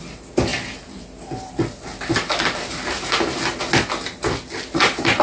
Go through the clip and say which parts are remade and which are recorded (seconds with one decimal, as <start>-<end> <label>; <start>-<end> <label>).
0.0-5.2 recorded

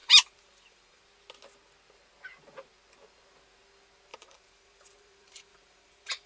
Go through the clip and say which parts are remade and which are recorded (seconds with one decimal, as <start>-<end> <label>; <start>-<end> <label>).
0.0-1.0 remade; 1.0-4.1 recorded; 4.1-6.3 remade